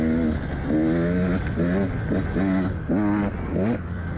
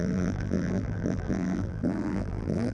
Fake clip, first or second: second